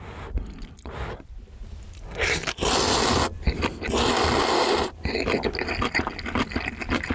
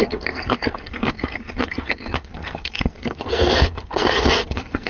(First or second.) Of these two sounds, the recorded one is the first